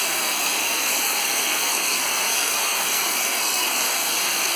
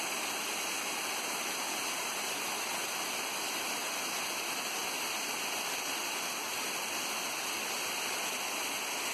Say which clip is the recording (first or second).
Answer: second